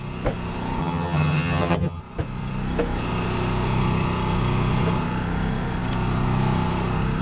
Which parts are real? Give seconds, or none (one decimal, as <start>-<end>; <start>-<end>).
0.0-0.8; 2.0-7.2